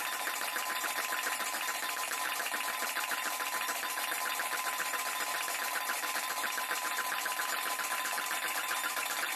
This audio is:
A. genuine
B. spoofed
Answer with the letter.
B